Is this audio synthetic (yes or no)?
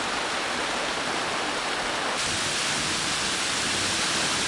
no